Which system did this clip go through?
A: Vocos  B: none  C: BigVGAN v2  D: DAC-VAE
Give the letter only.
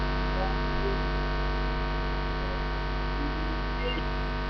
B